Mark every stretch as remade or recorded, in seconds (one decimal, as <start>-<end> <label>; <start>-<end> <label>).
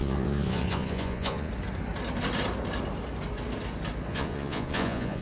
0.0-1.5 remade; 1.5-4.1 recorded; 4.1-5.2 remade